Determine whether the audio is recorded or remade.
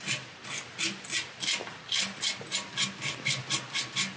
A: recorded